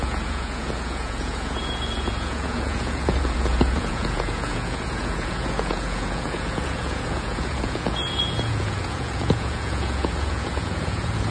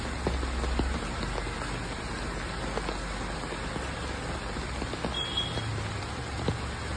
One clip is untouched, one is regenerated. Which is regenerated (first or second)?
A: first